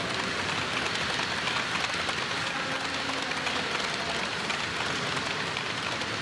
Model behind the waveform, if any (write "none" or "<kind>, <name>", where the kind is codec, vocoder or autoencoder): none